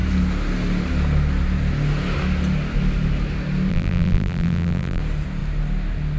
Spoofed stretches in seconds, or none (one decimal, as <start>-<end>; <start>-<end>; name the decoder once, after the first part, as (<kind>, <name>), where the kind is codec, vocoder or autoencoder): 3.7-5.0 (vocoder, BigVGAN v2)